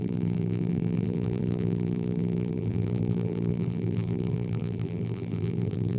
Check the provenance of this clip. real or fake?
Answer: fake